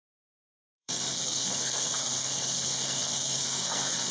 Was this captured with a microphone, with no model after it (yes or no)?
no